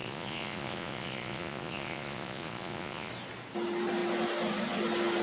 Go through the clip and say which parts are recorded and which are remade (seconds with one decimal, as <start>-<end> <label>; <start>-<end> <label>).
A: 0.0-3.1 remade; 3.1-5.2 recorded